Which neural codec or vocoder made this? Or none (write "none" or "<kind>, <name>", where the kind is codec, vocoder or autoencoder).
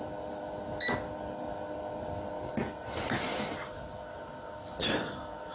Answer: none